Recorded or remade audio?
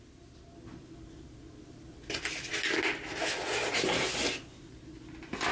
recorded